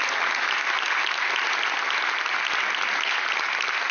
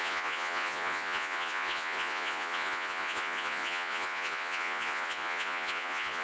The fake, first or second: second